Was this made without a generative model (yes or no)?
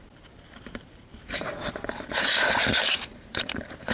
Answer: no